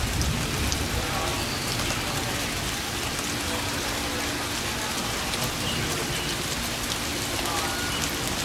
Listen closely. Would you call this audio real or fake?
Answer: real